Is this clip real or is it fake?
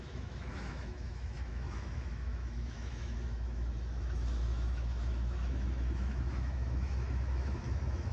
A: fake